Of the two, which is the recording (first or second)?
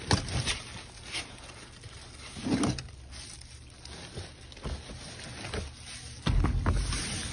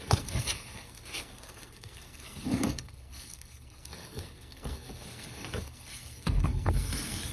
first